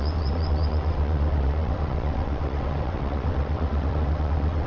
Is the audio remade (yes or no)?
yes